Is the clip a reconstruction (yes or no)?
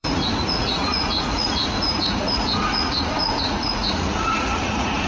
yes